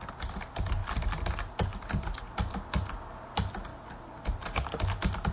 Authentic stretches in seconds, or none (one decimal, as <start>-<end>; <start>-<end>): 0.0-5.3